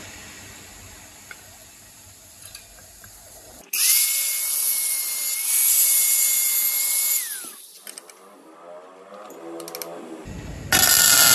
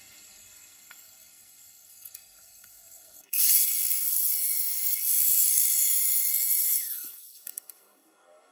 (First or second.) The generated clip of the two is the second